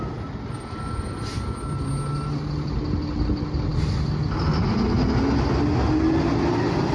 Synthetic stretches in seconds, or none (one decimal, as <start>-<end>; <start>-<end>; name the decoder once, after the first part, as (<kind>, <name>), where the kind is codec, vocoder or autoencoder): none